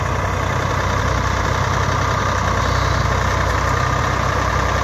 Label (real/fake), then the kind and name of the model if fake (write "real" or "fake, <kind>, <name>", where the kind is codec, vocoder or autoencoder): real